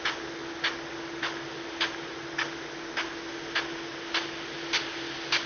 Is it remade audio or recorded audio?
recorded